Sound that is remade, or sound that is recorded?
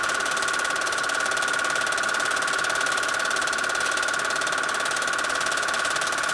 recorded